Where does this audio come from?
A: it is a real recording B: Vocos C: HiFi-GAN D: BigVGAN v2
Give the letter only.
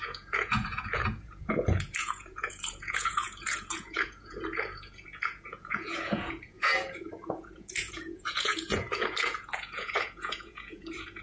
B